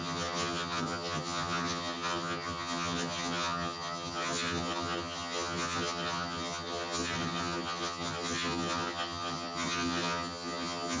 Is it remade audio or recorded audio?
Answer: remade